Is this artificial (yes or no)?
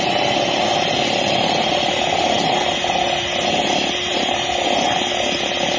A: no